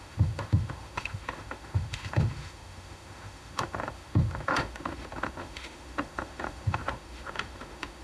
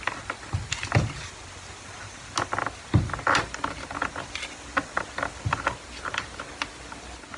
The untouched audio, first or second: second